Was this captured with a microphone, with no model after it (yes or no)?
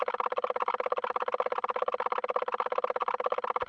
yes